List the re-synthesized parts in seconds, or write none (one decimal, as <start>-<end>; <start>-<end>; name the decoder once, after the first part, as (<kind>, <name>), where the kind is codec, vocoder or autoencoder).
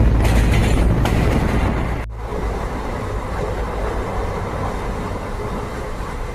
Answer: none